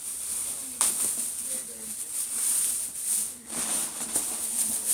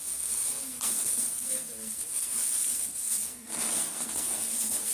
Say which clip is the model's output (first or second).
second